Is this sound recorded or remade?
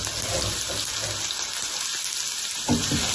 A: recorded